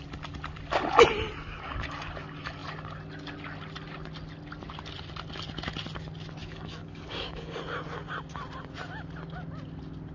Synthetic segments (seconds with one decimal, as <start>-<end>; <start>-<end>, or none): 6.4-7.6